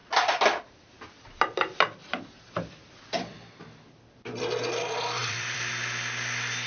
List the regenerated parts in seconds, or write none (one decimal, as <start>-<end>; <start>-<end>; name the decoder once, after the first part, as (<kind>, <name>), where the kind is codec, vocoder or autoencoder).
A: 2.0-3.6 (vocoder, BigVGAN v2); 5.2-5.7